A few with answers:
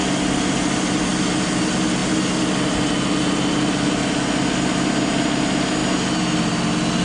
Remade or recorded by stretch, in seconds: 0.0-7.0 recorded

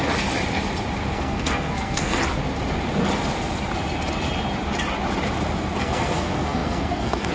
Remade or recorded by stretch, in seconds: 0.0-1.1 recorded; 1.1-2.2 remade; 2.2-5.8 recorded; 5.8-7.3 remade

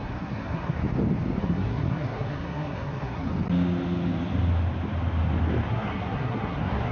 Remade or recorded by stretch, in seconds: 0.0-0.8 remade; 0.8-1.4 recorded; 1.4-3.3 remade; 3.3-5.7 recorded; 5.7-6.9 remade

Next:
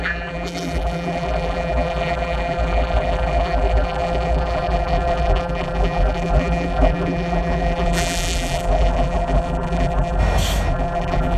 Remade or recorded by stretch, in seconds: 0.0-10.2 remade; 10.2-10.7 recorded; 10.7-11.4 remade

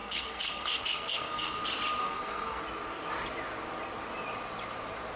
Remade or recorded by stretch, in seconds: 0.0-1.6 remade; 1.6-2.0 recorded; 2.0-2.6 remade; 2.6-5.2 recorded